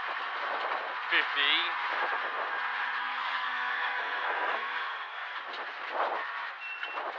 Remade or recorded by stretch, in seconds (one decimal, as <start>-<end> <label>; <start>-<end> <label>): 0.0-3.0 recorded; 3.0-5.4 remade; 5.4-7.2 recorded